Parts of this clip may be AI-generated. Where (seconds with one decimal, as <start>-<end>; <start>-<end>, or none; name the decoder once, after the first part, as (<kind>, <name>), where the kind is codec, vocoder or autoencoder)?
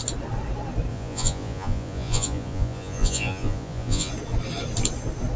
0.9-4.1 (vocoder, Vocos)